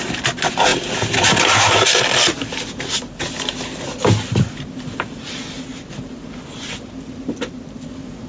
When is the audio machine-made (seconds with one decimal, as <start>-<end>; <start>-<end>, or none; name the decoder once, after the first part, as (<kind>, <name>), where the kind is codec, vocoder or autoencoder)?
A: none